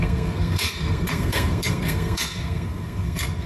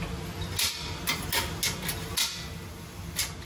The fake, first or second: first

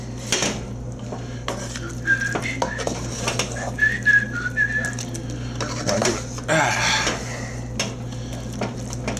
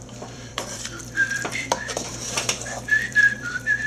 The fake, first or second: second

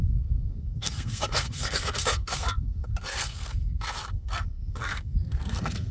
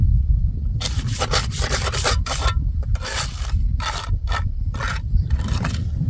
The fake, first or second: first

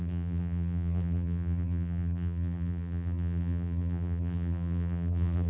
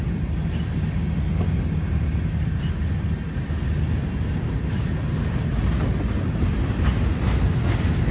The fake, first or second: first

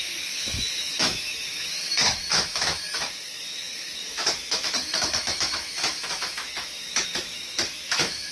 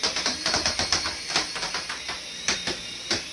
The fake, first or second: first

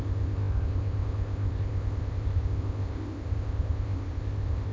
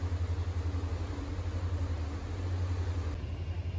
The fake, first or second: first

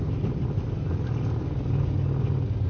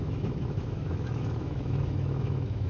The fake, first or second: second